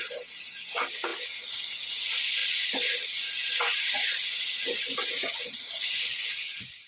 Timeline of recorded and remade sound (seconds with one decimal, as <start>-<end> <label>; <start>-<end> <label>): 0.0-6.9 recorded